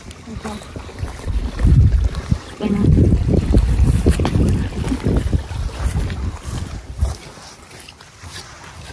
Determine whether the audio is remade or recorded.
remade